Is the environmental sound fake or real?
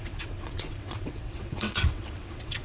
fake